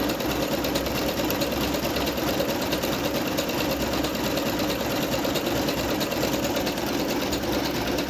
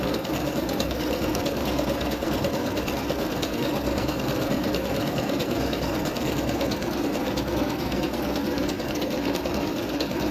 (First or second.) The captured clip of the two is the first